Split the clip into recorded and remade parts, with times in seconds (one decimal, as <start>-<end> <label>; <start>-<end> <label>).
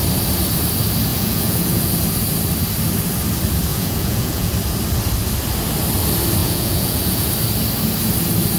0.0-1.1 recorded; 1.1-2.0 remade; 2.0-3.7 recorded; 3.7-4.5 remade; 4.5-6.4 recorded; 6.4-7.3 remade; 7.3-8.6 recorded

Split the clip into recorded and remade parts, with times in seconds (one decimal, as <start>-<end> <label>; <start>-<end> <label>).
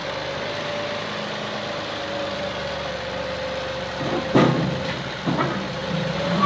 0.0-5.8 recorded; 5.8-6.5 remade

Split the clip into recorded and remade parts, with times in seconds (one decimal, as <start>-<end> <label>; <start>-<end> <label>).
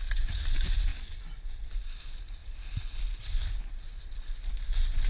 0.0-5.1 recorded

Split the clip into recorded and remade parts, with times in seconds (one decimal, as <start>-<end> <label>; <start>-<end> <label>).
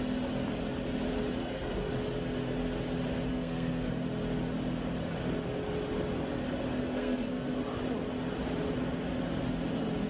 0.0-1.4 recorded; 1.4-1.9 remade; 1.9-3.3 recorded; 3.3-3.9 remade; 3.9-6.8 recorded; 6.8-7.6 remade; 7.6-10.1 recorded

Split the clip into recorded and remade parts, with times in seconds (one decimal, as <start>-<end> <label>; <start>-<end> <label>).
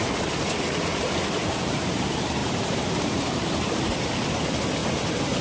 0.0-0.9 recorded; 0.9-2.0 remade; 2.0-2.4 recorded; 2.4-3.9 remade; 3.9-5.4 recorded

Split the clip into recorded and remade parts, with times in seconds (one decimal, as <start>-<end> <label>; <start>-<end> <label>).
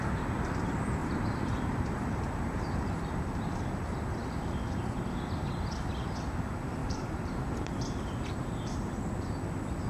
0.0-1.0 recorded; 1.0-3.4 remade; 3.4-6.8 recorded; 6.8-9.0 remade; 9.0-9.9 recorded